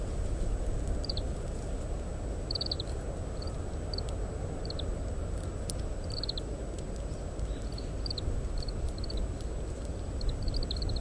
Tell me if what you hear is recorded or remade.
recorded